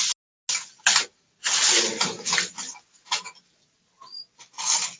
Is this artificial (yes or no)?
no